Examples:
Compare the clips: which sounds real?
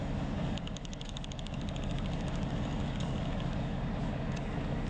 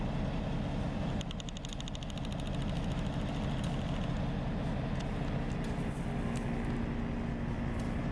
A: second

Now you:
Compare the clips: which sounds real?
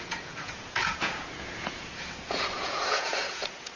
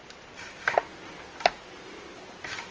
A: second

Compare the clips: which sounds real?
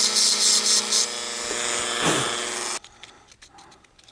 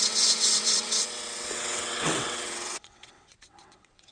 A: first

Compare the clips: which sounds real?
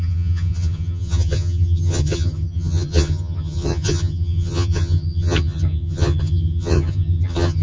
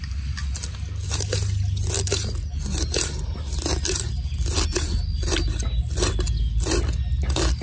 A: second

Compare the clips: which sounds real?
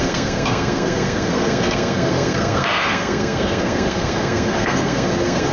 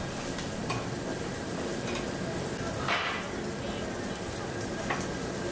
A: second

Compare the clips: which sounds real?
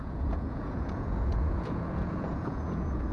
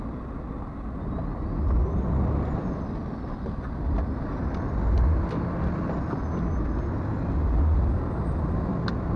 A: second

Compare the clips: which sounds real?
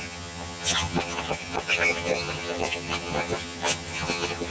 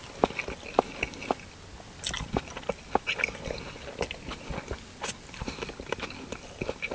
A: second